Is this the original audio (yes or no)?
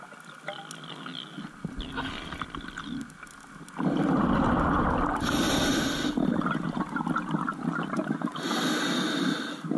yes